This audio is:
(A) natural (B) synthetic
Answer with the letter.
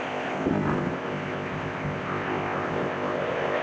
B